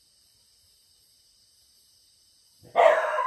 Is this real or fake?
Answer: real